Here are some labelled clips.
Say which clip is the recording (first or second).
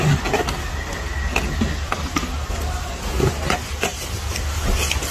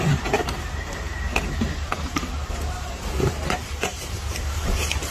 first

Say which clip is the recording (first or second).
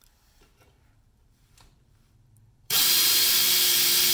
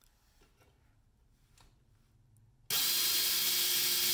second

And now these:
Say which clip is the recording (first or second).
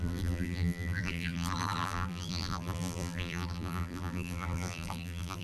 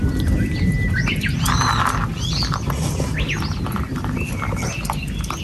second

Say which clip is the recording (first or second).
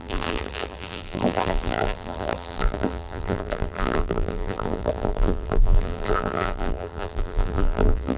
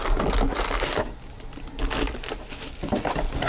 second